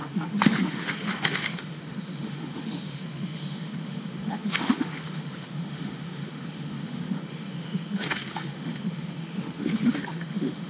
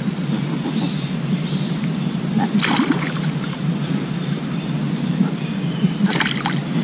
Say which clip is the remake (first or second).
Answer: first